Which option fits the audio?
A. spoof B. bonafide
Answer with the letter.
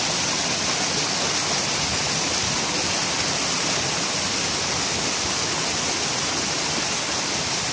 B